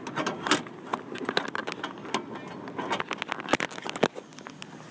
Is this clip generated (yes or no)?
no